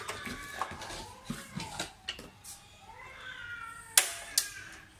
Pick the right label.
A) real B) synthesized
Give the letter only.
A